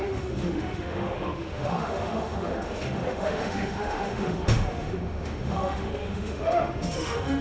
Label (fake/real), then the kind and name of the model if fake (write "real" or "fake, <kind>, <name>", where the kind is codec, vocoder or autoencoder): fake, autoencoder, DAC-VAE